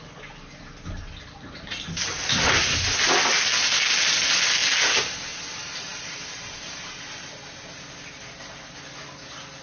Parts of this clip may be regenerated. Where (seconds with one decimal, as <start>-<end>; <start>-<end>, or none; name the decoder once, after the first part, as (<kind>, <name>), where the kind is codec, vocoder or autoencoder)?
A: none